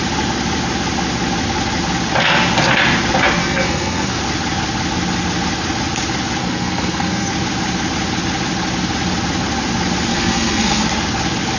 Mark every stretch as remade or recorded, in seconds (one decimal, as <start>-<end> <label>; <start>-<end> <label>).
0.0-3.4 recorded; 3.4-4.2 remade; 4.2-6.4 recorded; 6.4-7.3 remade; 7.3-10.1 recorded; 10.1-10.8 remade; 10.8-11.6 recorded